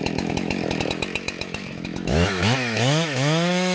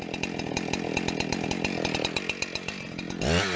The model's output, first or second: first